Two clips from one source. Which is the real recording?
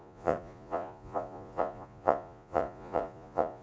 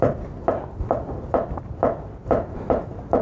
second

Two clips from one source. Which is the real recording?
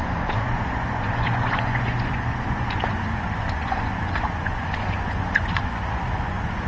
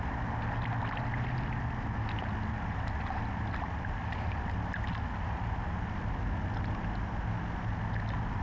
second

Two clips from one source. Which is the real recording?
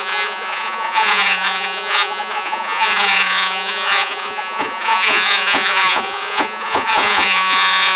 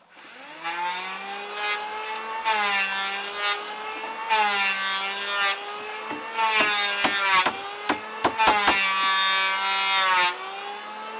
second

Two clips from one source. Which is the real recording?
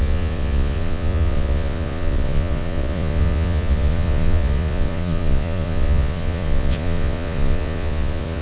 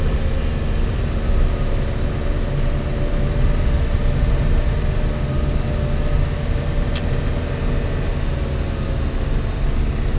second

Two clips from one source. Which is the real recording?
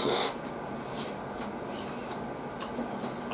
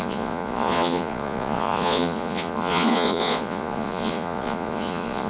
first